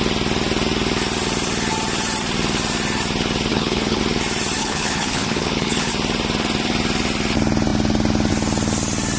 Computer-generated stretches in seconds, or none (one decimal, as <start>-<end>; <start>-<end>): 3.5-4.0; 4.6-5.9

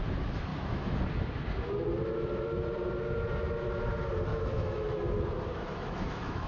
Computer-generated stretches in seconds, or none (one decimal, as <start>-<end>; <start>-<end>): 0.5-1.0; 4.3-5.0; 5.5-6.5